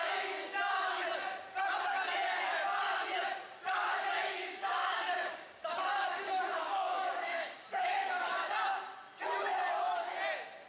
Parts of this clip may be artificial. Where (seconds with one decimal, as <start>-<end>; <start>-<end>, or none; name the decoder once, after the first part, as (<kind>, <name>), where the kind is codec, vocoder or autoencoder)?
0.0-1.0 (codec, DAC); 3.9-8.5